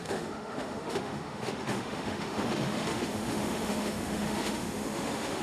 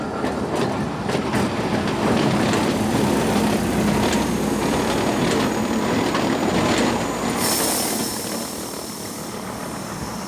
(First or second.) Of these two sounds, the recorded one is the second